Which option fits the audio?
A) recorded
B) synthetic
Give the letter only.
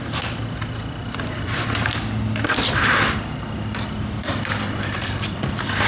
A